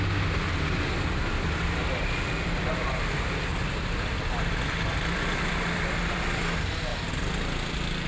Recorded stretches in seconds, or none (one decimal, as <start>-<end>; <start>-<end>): 0.0-3.5; 6.2-8.1